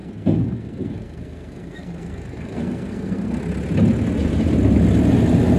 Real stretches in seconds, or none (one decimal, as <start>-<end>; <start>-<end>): 3.4-5.6